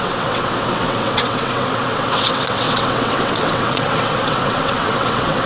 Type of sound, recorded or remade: remade